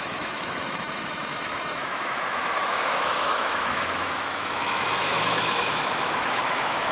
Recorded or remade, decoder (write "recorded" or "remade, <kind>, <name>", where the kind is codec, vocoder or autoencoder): remade, autoencoder, DAC-VAE